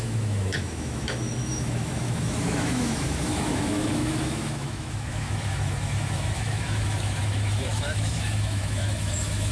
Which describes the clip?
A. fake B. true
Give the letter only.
A